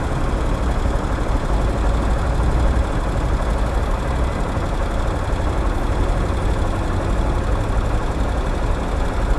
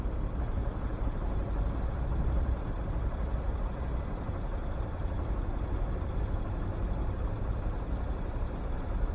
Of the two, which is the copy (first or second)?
second